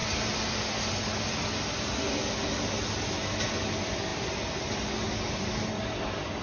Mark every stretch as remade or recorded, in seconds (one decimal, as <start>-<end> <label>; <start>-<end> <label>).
0.0-6.4 recorded